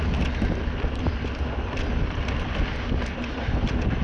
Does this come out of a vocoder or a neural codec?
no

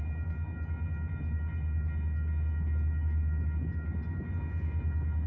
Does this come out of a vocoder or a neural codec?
no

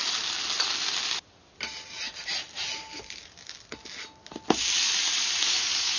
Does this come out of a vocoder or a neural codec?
no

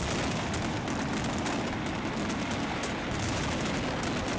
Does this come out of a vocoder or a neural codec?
no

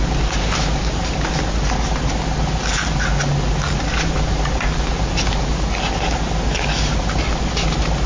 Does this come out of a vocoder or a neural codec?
no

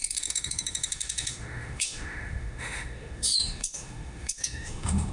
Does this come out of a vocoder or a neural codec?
yes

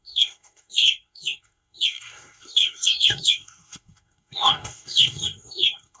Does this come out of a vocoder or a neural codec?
yes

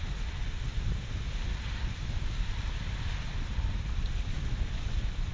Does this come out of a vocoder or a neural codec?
no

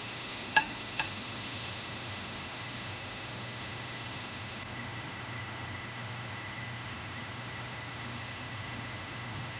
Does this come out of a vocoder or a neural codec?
yes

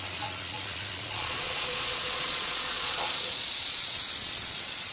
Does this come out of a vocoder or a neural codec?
yes